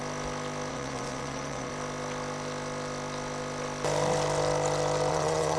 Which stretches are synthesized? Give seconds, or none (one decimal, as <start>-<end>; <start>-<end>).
0.7-1.7; 5.1-5.6